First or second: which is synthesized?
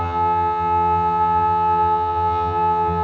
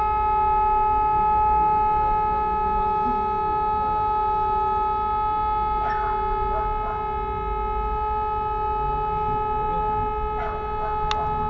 first